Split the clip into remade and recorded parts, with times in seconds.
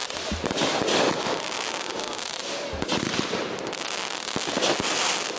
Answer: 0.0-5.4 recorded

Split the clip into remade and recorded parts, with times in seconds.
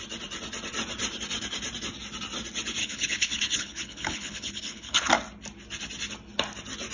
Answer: 0.0-2.8 recorded; 2.8-5.1 remade; 5.1-6.9 recorded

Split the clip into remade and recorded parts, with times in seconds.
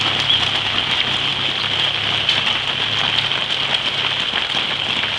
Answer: 0.0-5.2 recorded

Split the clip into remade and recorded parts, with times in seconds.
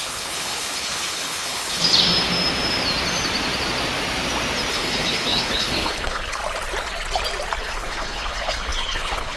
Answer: 0.0-1.8 remade; 1.8-4.7 recorded; 4.7-6.4 remade; 6.4-7.6 recorded; 7.6-9.4 remade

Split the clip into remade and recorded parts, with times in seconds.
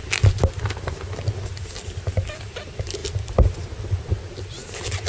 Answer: 0.0-5.1 recorded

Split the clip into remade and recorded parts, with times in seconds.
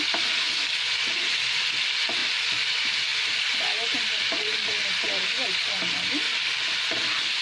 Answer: 0.0-7.4 recorded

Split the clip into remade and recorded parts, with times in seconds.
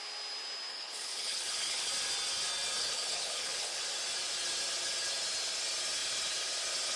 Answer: 0.0-0.7 recorded; 0.7-1.9 remade; 1.9-2.8 recorded; 2.8-3.8 remade; 3.8-7.0 recorded